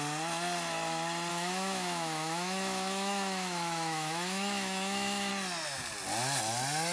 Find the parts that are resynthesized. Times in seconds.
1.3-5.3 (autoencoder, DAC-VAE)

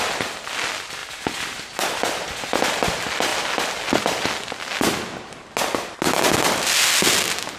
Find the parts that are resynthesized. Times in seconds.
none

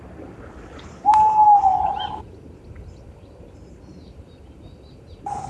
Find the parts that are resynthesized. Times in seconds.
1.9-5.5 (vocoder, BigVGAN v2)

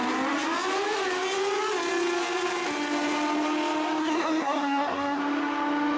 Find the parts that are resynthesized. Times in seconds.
4.0-5.2 (codec, SNAC)

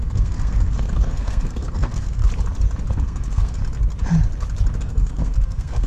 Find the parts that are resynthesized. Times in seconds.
0.0-2.2 (codec, SNAC); 2.9-3.6; 4.8-5.9

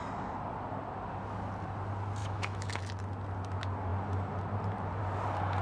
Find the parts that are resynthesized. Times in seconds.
2.2-2.8 (autoencoder, DAC-VAE)